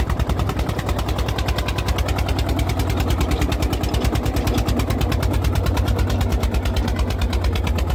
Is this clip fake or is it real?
real